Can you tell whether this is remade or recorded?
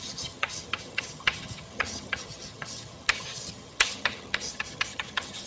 remade